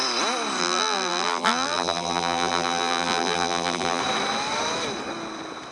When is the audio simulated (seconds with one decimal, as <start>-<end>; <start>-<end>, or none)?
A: 0.6-4.0